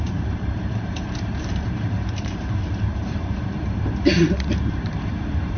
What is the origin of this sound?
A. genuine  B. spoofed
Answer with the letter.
B